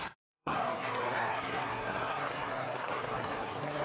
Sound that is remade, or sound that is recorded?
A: remade